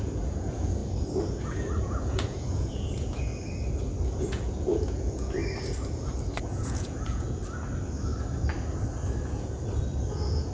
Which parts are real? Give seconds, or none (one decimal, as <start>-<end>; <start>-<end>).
0.8-1.8; 3.3-4.2; 5.4-6.4; 7.4-10.1